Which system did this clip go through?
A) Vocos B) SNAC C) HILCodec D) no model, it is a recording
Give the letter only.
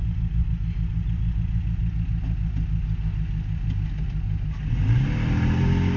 D